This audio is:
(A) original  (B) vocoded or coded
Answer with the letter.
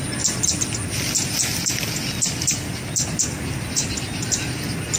A